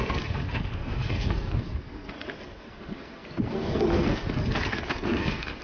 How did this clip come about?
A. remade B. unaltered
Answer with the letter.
A